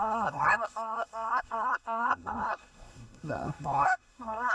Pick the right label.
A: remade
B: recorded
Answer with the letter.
A